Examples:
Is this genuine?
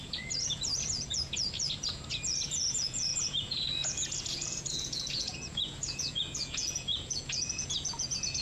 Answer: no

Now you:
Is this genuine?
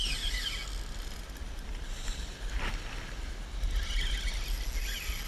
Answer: yes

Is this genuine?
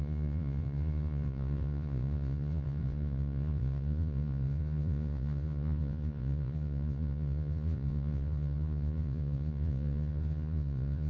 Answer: no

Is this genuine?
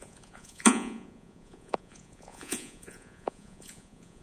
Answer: no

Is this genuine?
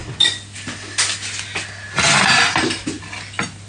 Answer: yes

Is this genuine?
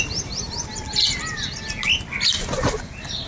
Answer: yes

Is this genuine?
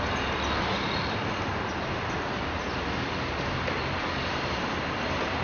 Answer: yes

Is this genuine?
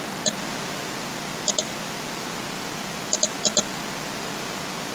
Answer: yes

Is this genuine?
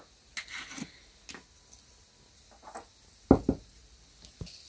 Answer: yes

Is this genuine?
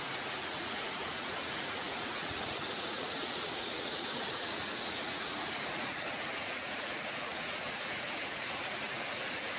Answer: no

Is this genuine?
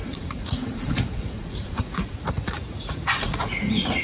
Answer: no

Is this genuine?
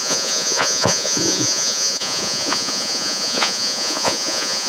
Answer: no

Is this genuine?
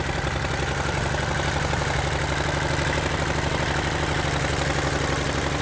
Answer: yes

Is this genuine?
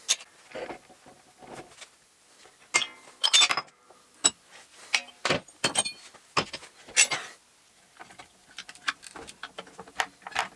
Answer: yes